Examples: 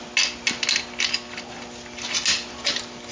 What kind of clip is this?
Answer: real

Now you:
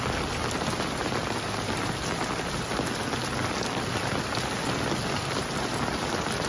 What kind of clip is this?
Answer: real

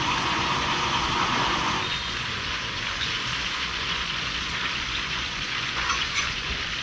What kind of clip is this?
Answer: fake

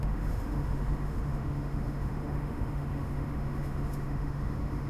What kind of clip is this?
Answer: fake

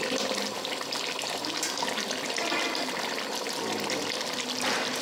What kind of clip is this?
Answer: real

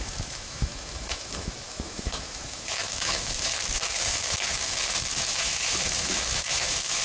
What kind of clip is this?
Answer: fake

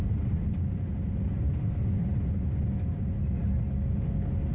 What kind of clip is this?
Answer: real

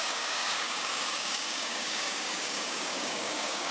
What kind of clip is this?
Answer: fake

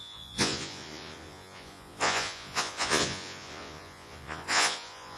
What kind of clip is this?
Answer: fake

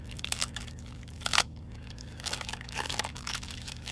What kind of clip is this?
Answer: fake